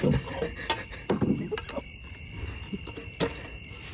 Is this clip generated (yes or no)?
yes